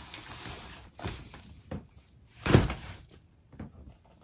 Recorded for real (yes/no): yes